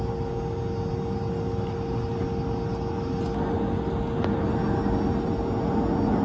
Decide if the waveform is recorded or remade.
recorded